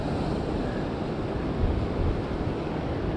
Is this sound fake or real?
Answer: real